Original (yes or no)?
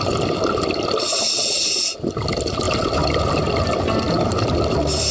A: yes